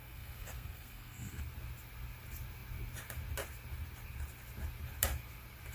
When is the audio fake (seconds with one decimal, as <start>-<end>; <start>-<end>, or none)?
0.0-1.4

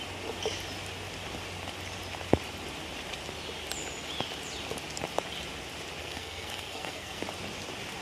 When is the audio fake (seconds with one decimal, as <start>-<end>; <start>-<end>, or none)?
6.0-7.2

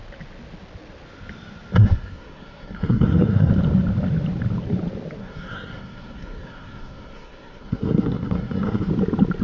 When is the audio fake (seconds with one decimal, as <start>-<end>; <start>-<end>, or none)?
1.8-3.5; 5.2-8.9